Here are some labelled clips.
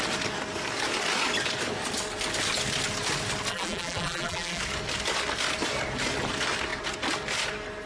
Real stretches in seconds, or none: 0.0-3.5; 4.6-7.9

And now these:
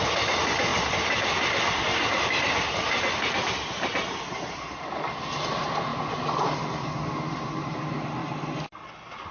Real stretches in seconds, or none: 0.0-9.3

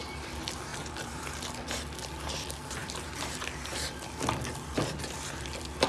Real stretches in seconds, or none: 0.0-0.7; 1.7-2.8; 4.8-5.9